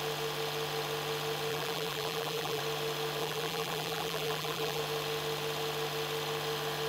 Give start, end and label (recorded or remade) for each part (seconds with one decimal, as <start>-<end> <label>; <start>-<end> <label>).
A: 0.0-1.5 recorded; 1.5-2.6 remade; 2.6-3.2 recorded; 3.2-4.8 remade; 4.8-6.9 recorded